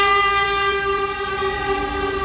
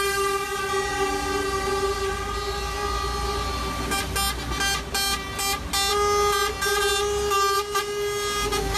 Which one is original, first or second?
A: second